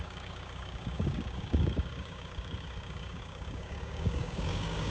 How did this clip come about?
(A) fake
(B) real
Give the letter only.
A